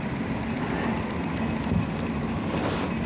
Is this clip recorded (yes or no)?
yes